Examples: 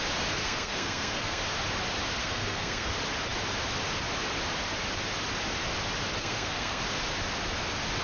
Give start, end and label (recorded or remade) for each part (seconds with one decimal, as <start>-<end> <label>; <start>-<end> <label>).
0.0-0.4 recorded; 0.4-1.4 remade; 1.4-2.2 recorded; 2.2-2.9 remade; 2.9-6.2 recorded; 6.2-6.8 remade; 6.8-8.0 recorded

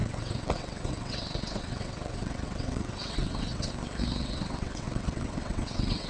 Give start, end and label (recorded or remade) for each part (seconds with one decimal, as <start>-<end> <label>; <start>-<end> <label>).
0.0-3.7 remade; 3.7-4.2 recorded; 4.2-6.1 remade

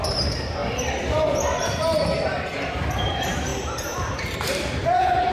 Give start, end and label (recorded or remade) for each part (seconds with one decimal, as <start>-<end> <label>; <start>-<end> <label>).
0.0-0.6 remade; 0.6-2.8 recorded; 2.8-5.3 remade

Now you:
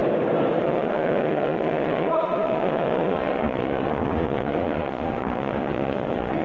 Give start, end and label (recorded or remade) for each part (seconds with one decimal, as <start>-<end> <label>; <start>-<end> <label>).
0.0-0.6 recorded; 0.6-6.4 remade

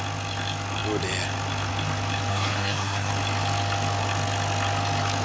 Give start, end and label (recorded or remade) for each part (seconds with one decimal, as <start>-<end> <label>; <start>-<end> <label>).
0.0-2.3 recorded; 2.3-3.1 remade; 3.1-5.2 recorded